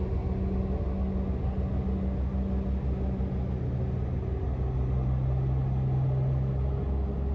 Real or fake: real